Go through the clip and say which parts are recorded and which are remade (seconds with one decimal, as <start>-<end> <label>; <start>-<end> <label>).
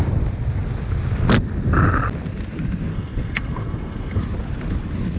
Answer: 0.0-2.9 recorded; 2.9-4.2 remade; 4.2-5.2 recorded